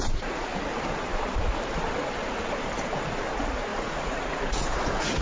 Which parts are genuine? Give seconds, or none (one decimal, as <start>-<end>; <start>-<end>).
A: 0.5-3.3